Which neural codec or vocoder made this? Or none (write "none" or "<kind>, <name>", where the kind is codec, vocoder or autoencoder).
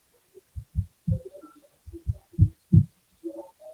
vocoder, BigVGAN v2